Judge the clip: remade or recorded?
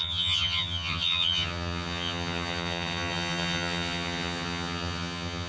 remade